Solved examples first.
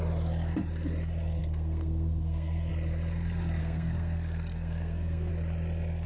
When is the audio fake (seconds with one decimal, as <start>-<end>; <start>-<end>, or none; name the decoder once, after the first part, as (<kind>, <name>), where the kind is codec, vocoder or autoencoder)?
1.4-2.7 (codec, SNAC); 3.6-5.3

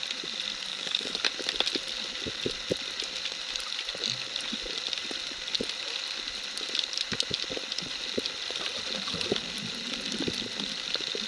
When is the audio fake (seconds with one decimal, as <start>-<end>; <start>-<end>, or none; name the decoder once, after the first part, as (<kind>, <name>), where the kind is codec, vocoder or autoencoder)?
0.7-1.2 (codec, DAC)

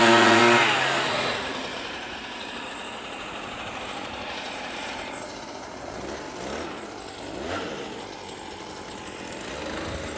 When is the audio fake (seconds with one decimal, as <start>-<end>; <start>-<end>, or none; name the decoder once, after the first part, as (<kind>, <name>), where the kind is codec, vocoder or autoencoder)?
0.0-0.4 (vocoder, Vocos); 1.1-6.0

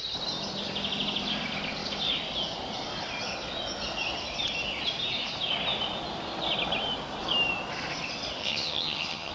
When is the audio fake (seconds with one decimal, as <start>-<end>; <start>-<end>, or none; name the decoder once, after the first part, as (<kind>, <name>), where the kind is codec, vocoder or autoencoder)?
8.4-9.3 (vocoder, HiFi-GAN)

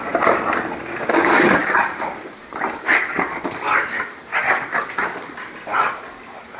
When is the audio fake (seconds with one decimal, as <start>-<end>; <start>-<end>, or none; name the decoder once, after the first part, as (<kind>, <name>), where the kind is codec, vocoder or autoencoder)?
1.6-3.4 (vocoder, BigVGAN v2); 4.3-6.6